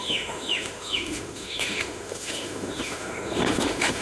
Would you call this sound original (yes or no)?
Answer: no